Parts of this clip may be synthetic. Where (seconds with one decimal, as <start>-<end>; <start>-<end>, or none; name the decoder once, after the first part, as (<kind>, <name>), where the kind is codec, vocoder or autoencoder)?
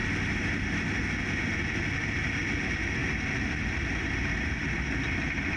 none